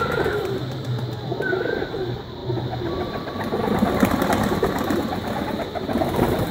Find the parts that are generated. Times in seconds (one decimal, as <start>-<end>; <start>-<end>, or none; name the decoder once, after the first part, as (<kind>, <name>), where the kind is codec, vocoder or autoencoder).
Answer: none

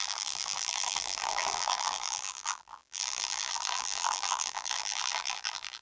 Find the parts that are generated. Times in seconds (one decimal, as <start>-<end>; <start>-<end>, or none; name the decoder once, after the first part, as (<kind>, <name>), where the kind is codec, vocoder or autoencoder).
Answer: 0.0-5.8 (vocoder, BigVGAN v2)